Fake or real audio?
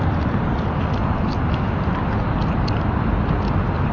real